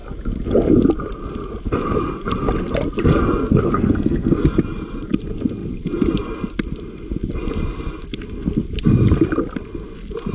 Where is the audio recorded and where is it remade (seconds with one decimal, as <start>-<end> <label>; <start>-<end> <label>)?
0.0-3.5 recorded; 3.5-4.4 remade; 4.4-10.3 recorded